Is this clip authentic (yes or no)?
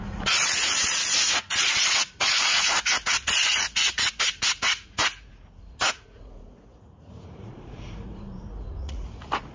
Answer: no